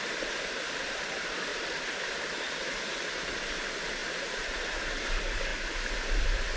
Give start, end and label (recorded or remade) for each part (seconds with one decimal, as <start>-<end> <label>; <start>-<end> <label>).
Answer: 0.0-4.0 recorded; 4.0-4.8 remade; 4.8-6.6 recorded